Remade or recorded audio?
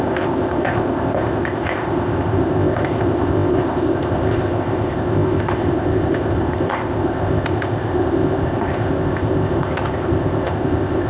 remade